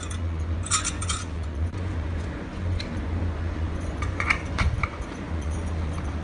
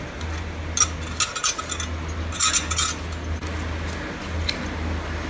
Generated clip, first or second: first